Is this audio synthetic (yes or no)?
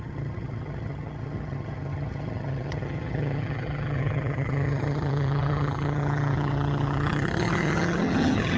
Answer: yes